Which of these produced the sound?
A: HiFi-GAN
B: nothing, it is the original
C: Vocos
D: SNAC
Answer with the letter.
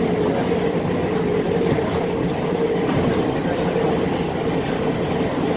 B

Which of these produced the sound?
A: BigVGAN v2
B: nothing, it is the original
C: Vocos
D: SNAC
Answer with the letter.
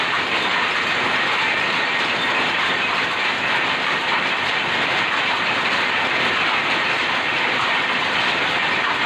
B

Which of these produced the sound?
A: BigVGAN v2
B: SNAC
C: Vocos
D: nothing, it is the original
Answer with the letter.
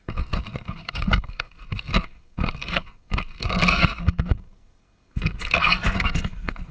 B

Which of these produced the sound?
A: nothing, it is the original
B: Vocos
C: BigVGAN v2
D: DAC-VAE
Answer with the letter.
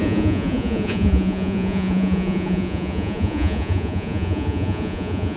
B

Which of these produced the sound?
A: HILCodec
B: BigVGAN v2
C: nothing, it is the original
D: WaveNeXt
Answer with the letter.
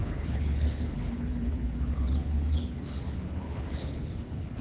A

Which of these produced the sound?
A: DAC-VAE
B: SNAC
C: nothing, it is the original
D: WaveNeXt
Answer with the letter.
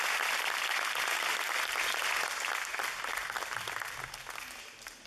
C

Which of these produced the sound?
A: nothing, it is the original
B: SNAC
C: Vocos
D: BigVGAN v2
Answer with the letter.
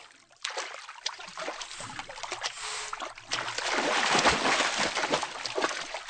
A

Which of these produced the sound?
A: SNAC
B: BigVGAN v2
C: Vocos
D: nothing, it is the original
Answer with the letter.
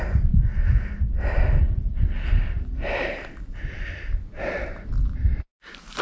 D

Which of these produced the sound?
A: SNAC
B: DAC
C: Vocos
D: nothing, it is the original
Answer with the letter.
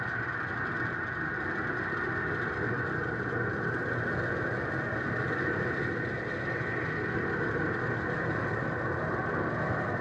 D